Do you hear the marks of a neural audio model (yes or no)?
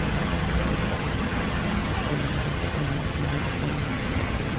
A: yes